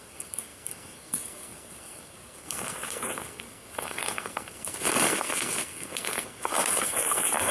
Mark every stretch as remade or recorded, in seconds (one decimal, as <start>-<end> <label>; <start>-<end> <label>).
0.0-7.5 remade